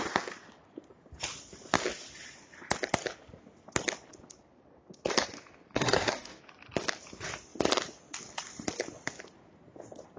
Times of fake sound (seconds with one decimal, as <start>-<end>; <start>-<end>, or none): 5.7-6.4